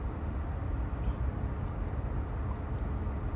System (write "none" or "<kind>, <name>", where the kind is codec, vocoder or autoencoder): none